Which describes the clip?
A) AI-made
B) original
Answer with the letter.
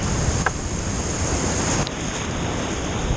A